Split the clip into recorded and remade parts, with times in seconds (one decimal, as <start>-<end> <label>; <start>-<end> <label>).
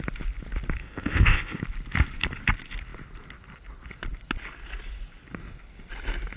0.0-0.8 recorded; 0.8-1.6 remade; 1.6-6.4 recorded